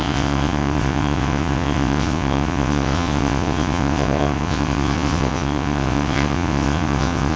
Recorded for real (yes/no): no